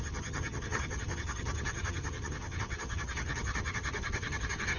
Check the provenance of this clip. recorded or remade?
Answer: remade